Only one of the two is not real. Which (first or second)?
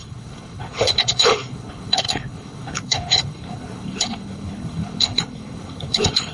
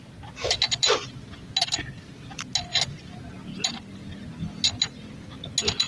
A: first